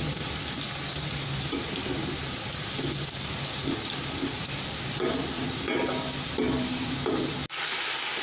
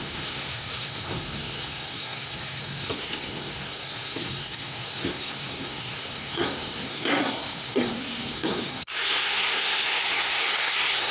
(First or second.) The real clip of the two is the first